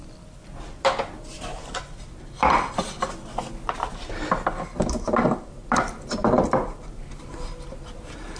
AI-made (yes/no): no